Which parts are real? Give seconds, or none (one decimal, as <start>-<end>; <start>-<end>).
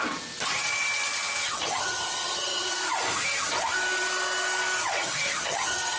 0.0-1.4; 2.7-5.0